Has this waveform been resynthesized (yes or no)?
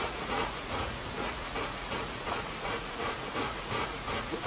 yes